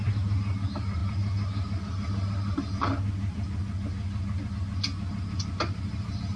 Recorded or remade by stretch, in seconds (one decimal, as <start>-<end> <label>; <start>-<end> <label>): 0.0-6.4 recorded